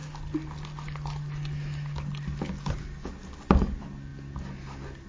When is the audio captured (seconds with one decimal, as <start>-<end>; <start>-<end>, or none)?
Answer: 0.0-5.1